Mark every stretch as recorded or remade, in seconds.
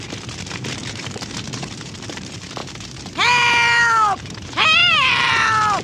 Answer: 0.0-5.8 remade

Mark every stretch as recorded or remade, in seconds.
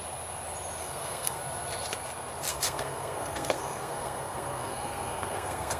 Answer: 0.0-0.8 recorded; 0.8-1.4 remade; 1.4-2.5 recorded; 2.5-5.8 remade